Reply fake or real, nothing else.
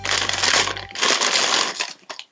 real